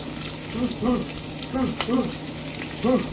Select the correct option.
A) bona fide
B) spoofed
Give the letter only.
A